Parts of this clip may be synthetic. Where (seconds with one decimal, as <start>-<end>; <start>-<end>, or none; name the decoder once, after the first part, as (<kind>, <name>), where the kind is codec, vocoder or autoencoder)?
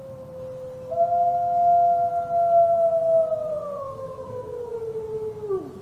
3.5-4.7 (codec, SNAC)